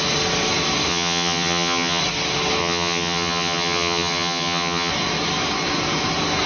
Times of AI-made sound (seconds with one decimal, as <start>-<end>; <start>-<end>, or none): 0.9-2.0; 2.6-4.9